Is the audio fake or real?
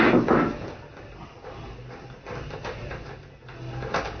real